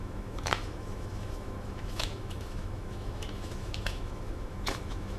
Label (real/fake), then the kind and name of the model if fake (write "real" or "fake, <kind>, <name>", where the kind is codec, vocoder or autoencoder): fake, autoencoder, DAC-VAE